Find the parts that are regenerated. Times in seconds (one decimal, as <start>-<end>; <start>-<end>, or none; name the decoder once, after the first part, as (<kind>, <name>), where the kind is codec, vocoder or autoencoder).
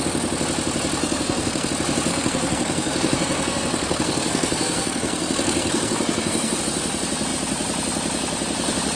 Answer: 1.0-1.7 (codec, SNAC); 2.1-6.6